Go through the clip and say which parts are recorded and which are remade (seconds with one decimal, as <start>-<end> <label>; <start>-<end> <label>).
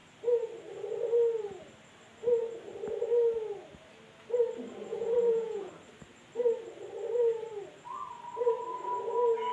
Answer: 0.0-4.9 recorded; 4.9-5.7 remade; 5.7-9.5 recorded